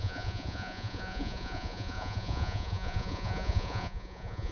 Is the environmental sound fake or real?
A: fake